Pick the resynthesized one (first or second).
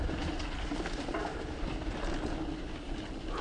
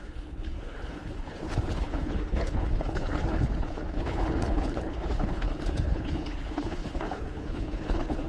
second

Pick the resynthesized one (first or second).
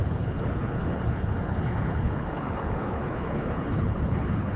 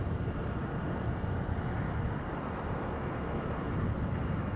first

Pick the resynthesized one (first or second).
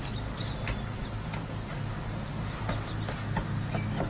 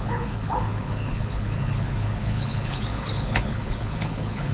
second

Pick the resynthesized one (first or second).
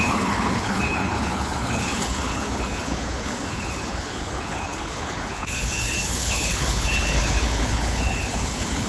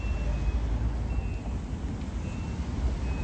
first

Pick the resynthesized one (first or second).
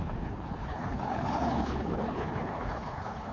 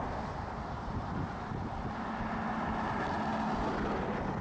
first